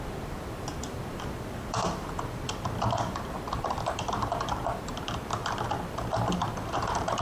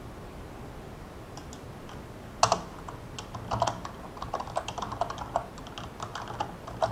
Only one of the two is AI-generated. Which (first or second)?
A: first